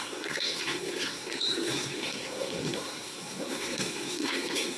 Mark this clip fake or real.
fake